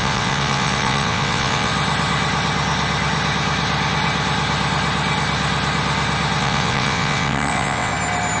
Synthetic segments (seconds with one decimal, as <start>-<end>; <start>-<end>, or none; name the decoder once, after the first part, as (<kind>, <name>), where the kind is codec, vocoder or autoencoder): 0.0-1.7 (vocoder, WaveNeXt); 6.4-7.9